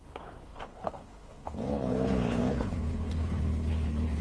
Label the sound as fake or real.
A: fake